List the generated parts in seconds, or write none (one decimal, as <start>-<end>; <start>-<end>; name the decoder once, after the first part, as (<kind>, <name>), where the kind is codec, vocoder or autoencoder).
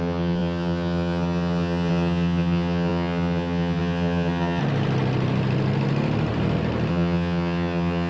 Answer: 0.0-4.6 (vocoder, HiFi-GAN); 6.9-8.1